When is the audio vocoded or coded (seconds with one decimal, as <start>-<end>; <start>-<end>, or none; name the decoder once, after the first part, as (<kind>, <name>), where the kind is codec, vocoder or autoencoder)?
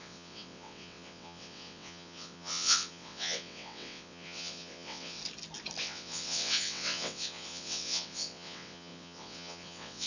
0.0-5.2 (vocoder, WaveNeXt); 5.8-10.1